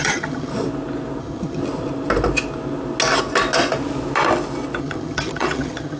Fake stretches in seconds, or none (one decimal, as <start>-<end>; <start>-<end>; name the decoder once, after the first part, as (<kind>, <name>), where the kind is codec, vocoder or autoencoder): 0.0-0.5 (vocoder, HiFi-GAN); 1.2-1.6; 4.8-6.0